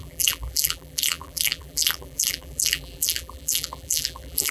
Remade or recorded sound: remade